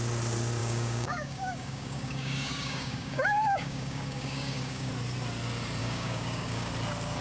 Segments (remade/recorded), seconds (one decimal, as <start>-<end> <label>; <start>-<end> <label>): 0.0-0.6 recorded; 0.6-4.9 remade; 4.9-5.8 recorded; 5.8-6.7 remade; 6.7-7.2 recorded